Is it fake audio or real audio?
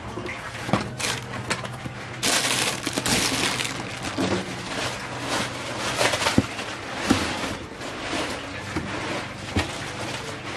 real